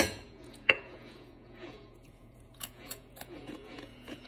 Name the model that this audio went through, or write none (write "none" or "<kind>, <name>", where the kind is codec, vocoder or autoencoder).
vocoder, Vocos